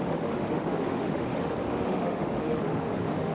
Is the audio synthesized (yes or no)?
yes